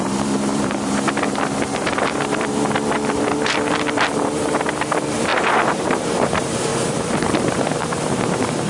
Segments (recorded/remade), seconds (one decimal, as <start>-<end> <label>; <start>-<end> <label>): 0.0-8.7 remade